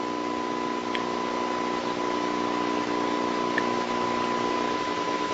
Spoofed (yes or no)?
no